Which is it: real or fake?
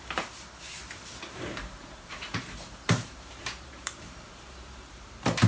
fake